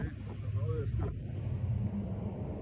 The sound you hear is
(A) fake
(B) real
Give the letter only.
B